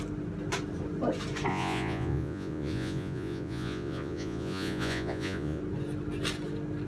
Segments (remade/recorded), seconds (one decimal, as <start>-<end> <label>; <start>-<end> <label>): 0.0-1.5 recorded; 1.5-5.6 remade; 5.6-6.9 recorded